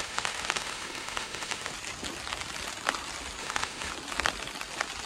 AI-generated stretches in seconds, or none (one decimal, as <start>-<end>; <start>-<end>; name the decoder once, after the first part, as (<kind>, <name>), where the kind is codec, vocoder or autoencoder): 0.0-1.7 (autoencoder, DAC-VAE); 3.4-3.9